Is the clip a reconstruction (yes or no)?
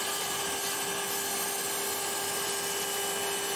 no